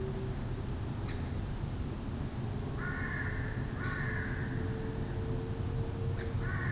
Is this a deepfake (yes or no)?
no